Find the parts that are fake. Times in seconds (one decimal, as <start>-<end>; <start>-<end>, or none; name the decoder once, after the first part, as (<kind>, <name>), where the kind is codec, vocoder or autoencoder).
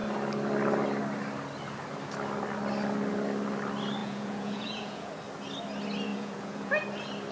4.0-5.1 (vocoder, Vocos); 6.1-6.7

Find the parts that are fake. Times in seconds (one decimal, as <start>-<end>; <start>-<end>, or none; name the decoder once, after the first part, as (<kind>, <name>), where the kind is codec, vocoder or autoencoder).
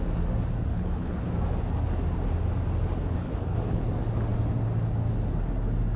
0.7-1.3 (codec, HILCodec); 3.2-3.9